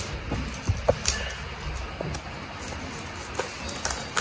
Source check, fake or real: real